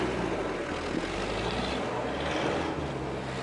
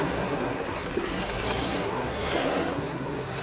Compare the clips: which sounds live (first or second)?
first